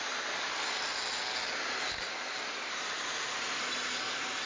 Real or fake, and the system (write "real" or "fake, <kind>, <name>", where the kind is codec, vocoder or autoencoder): real